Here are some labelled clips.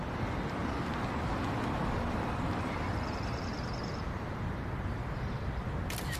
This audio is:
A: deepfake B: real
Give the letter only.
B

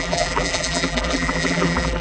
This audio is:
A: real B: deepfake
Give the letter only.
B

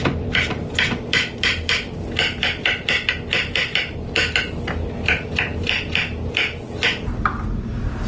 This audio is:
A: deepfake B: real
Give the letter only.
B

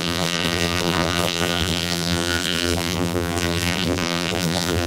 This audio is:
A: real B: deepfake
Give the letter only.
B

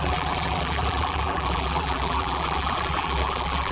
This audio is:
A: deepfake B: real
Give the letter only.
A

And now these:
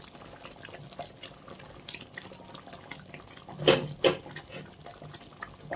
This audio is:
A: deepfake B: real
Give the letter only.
B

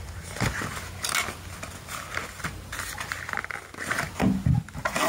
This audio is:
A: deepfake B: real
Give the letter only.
B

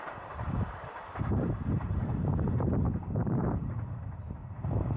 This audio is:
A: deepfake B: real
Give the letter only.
A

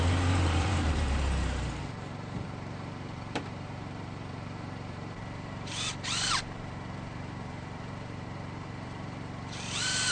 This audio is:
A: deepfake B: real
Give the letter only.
A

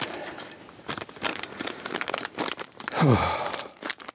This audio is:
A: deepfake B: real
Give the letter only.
A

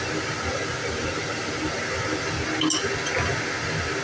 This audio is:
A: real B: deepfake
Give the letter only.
A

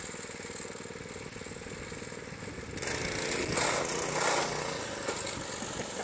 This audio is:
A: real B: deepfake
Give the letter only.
A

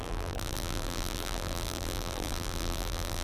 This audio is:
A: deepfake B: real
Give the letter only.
A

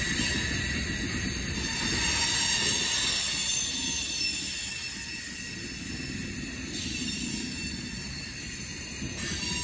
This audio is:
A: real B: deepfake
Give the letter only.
A